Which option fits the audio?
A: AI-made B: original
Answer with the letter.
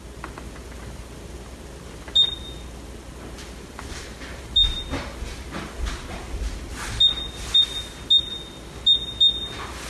B